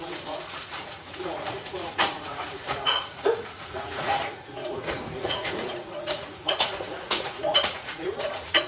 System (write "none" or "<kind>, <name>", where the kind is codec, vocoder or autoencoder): vocoder, Vocos